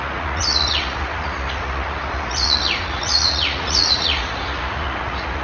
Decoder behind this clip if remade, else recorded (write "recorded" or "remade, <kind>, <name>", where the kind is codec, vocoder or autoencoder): remade, vocoder, Vocos